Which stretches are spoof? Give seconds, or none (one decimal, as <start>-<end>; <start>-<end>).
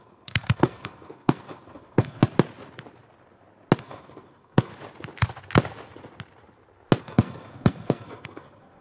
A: 0.0-2.2; 3.8-4.7; 7.0-8.8